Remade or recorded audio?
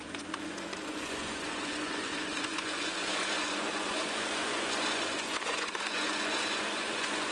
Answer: remade